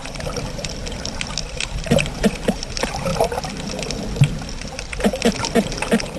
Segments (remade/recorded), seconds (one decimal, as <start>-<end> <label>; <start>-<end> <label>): 0.0-0.7 remade; 0.7-1.4 recorded; 1.4-2.7 remade; 2.7-6.2 recorded

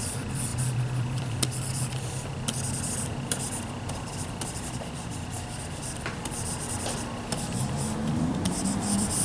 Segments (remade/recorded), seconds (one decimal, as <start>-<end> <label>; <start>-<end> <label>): 0.0-9.2 remade

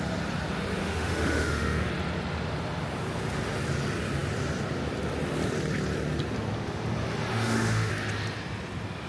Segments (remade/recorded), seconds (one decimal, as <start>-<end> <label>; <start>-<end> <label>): 0.0-0.8 recorded; 0.8-1.9 remade; 1.9-7.3 recorded; 7.3-7.9 remade; 7.9-9.1 recorded

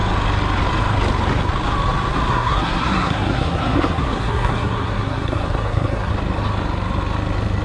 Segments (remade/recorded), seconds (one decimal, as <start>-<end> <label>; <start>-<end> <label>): 0.0-2.3 recorded; 2.3-6.1 remade; 6.1-7.6 recorded

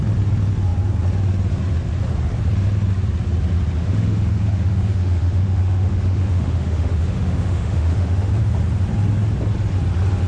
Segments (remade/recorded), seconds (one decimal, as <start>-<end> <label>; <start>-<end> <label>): 0.0-3.8 recorded; 3.8-8.4 remade; 8.4-10.3 recorded

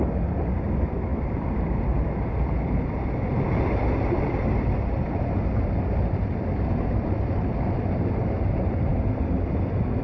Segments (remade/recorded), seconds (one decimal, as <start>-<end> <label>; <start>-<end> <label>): 0.0-10.0 recorded